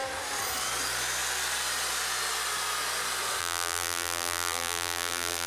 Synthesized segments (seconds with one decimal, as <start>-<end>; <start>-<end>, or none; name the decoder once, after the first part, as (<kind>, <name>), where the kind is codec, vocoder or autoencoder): 3.4-5.5 (vocoder, BigVGAN v2)